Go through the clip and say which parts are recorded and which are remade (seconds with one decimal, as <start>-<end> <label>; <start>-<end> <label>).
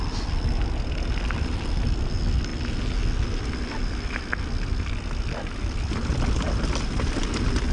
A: 0.0-7.7 recorded